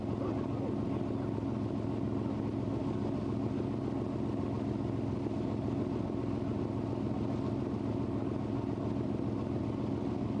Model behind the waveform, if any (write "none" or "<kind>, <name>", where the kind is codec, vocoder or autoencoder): none